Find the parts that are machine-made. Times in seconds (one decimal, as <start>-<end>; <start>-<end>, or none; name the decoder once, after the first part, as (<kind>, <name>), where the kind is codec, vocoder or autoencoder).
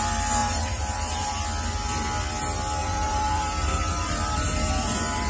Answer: 0.4-1.4 (vocoder, BigVGAN v2); 2.8-5.3